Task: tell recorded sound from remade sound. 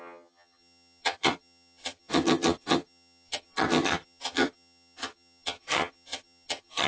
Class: remade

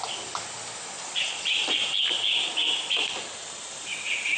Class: recorded